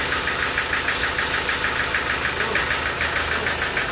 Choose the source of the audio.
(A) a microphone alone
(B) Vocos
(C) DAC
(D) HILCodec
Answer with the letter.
A